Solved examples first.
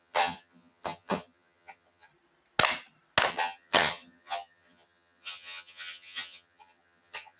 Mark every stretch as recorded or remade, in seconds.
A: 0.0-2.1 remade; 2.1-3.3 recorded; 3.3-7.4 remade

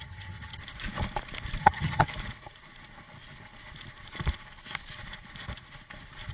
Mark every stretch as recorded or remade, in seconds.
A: 0.0-0.6 remade; 0.6-1.6 recorded; 1.6-2.1 remade; 2.1-6.3 recorded

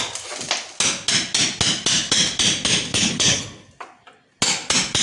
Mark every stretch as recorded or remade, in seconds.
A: 0.0-2.9 recorded; 2.9-3.4 remade; 3.4-5.0 recorded

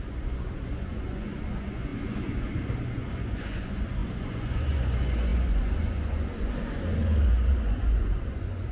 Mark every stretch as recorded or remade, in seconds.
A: 0.0-8.7 remade

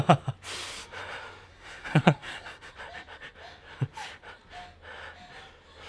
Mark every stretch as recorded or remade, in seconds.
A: 0.0-1.5 recorded; 1.5-2.7 remade; 2.7-5.9 recorded

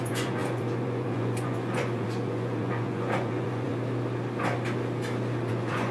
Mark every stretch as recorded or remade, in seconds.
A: 0.0-3.7 remade; 3.7-5.5 recorded; 5.5-5.9 remade